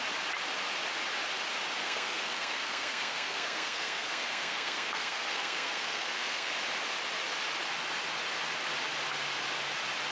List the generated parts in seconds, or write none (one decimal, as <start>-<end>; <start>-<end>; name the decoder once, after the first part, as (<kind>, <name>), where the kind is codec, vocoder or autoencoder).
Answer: 1.8-6.5 (codec, SNAC)